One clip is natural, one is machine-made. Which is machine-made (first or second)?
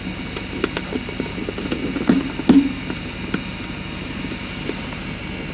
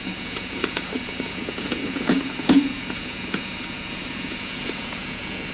second